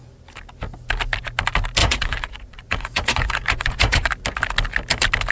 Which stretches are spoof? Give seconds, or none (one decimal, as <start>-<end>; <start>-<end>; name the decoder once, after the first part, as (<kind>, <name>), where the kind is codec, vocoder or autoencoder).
1.8-4.1 (vocoder, Vocos)

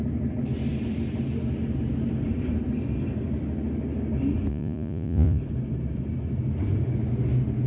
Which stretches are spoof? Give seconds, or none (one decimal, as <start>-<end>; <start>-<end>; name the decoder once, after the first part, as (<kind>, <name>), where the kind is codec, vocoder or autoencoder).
4.5-5.4 (vocoder, Vocos)

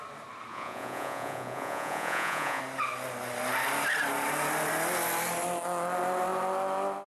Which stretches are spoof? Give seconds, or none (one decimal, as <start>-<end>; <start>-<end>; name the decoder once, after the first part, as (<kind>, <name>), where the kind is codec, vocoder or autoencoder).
0.5-2.6 (vocoder, Vocos)

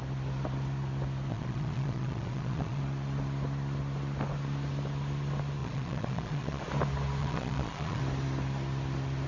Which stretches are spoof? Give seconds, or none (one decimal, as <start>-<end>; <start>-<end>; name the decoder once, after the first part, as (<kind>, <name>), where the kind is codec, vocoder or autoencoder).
1.3-2.8 (vocoder, Vocos); 5.6-6.6; 7.2-8.0

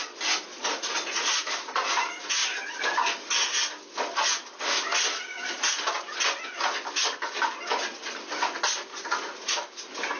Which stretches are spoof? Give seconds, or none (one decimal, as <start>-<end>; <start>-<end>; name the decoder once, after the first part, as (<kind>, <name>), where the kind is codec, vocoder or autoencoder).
0.5-1.2 (vocoder, Vocos); 8.9-9.5

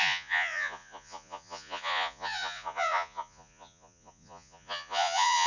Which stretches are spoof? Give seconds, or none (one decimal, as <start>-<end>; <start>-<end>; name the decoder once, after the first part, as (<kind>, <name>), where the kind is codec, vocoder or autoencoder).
0.0-5.5 (vocoder, Vocos)

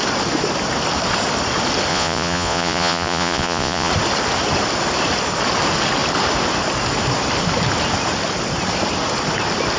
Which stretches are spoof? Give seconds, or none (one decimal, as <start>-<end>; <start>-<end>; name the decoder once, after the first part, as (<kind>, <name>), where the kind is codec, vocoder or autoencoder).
1.9-3.9 (vocoder, Vocos)

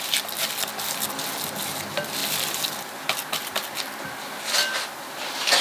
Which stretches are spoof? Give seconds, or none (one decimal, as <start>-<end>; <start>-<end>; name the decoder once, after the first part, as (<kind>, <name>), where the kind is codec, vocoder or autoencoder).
none